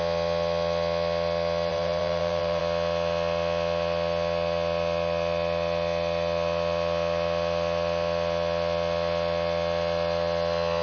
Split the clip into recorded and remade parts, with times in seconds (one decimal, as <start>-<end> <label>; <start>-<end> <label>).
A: 0.0-1.7 recorded; 1.7-2.6 remade; 2.6-10.8 recorded